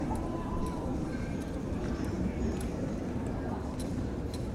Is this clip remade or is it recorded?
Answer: remade